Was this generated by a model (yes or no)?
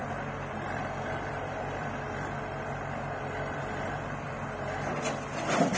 yes